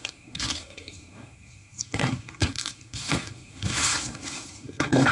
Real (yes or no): no